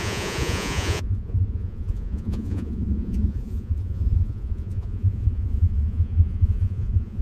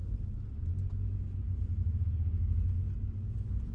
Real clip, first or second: second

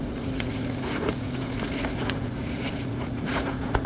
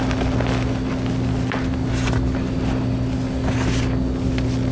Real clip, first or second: second